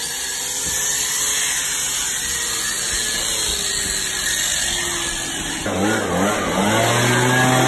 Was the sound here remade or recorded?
recorded